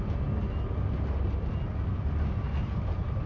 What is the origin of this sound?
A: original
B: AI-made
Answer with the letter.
A